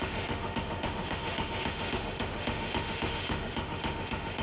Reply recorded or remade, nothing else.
remade